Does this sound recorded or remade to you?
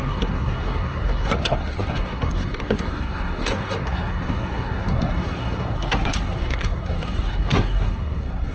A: remade